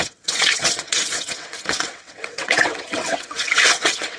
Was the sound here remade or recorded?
remade